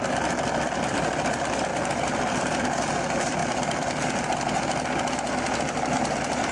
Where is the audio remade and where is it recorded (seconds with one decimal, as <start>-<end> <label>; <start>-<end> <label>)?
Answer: 0.0-1.7 recorded; 1.7-2.6 remade; 2.6-6.5 recorded